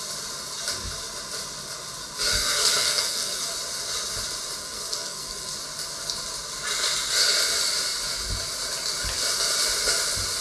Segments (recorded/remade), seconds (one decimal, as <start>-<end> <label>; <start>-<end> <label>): 0.0-2.3 recorded; 2.3-3.5 remade; 3.5-4.6 recorded; 4.6-5.6 remade; 5.6-10.4 recorded